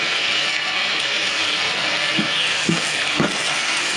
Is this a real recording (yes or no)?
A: no